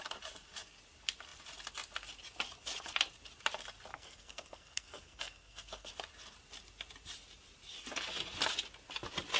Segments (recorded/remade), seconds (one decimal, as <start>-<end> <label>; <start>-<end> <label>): 0.0-3.9 recorded; 3.9-5.9 remade; 5.9-9.4 recorded